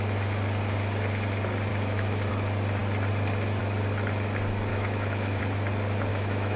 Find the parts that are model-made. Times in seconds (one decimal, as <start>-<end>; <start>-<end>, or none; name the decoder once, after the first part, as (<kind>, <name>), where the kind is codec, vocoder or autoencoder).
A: 1.7-2.3 (autoencoder, DAC-VAE); 4.7-5.4; 6.1-6.6